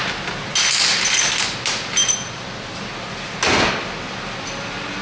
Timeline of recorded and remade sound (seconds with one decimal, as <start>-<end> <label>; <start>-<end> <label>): 0.0-5.0 recorded